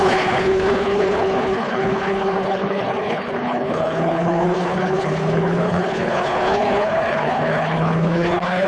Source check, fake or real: fake